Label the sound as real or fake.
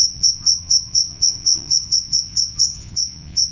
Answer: fake